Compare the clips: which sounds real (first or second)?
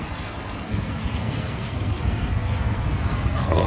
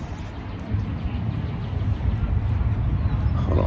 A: second